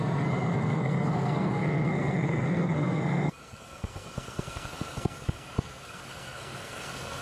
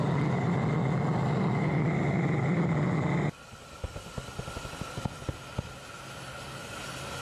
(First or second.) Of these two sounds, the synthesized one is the first